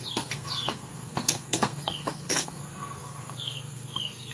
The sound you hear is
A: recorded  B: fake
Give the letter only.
B